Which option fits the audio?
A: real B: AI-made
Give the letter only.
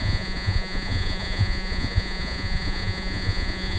B